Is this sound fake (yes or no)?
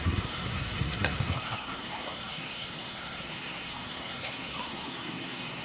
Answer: yes